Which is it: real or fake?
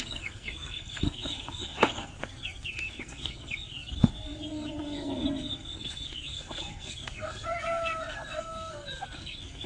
fake